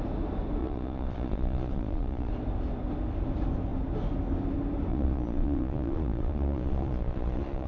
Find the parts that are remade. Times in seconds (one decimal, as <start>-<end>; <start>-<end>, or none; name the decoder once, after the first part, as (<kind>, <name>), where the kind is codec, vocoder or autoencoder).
0.6-2.3 (vocoder, Vocos); 4.9-7.7

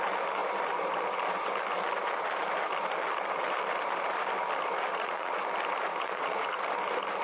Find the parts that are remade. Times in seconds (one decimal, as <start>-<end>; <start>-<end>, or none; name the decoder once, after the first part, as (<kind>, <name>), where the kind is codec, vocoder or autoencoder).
4.9-5.4 (vocoder, Vocos); 5.9-6.6

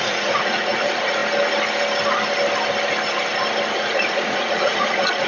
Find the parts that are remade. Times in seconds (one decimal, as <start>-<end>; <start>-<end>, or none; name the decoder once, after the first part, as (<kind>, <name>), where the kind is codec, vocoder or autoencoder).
0.0-1.2 (vocoder, Vocos); 3.8-5.3

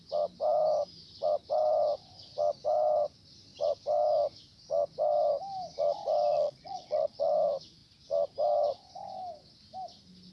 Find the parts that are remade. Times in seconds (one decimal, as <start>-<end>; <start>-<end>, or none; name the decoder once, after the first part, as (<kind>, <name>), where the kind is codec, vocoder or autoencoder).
6.3-7.3 (vocoder, Vocos)

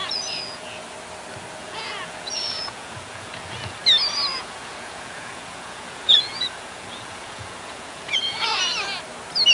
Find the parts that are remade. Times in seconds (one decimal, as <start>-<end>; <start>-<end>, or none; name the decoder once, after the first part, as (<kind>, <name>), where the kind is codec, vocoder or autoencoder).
0.0-0.8 (vocoder, Vocos); 1.6-3.8; 4.3-8.6